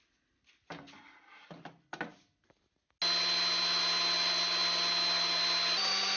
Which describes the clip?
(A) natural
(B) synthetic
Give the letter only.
A